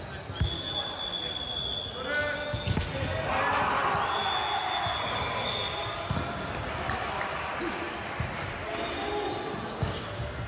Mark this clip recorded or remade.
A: recorded